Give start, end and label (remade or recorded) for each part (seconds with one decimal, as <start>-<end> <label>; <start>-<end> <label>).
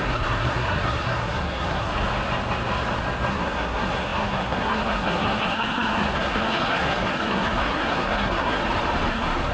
0.0-1.9 remade; 1.9-3.3 recorded; 3.3-8.6 remade; 8.6-9.1 recorded; 9.1-9.5 remade